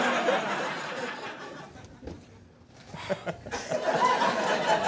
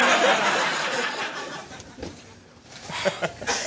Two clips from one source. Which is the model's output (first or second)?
second